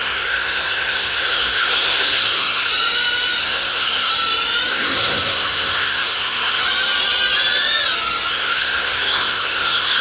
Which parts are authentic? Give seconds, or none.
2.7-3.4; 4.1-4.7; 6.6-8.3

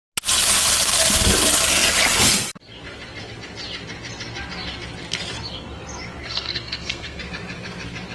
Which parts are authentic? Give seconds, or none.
0.0-6.2; 7.2-8.1